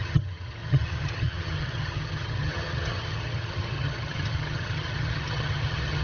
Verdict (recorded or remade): remade